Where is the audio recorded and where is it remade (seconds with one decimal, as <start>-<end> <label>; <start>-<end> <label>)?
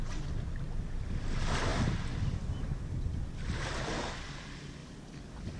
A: 0.0-1.7 recorded; 1.7-3.9 remade; 3.9-4.8 recorded; 4.8-5.6 remade